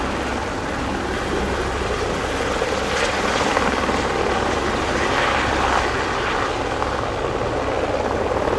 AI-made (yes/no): no